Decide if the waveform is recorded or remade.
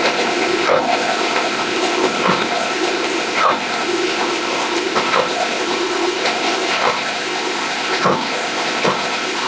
remade